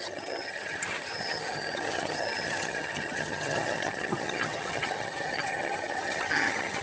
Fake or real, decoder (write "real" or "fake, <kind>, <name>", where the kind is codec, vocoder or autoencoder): fake, vocoder, HiFi-GAN